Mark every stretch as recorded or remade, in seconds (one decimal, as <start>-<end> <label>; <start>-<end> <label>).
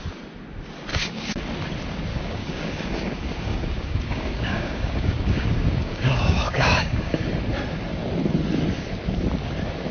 0.0-0.9 recorded; 0.9-1.4 remade; 1.4-2.1 recorded; 2.1-7.3 remade; 7.3-9.9 recorded